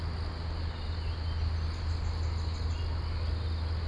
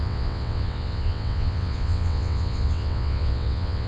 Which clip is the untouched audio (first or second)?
first